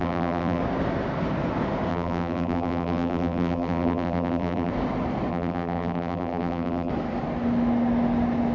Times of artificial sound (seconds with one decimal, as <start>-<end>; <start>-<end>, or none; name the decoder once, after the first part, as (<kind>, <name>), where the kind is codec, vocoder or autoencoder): 0.0-0.6 (vocoder, BigVGAN v2); 1.9-4.7; 5.3-6.9